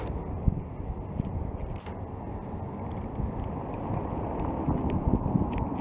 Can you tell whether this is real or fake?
real